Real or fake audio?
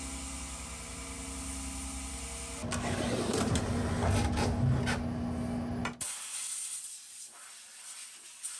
real